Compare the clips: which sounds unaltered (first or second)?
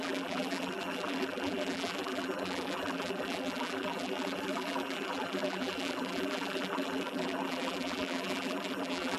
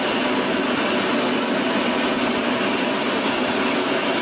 second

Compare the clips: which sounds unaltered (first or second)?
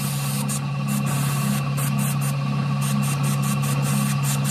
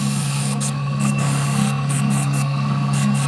first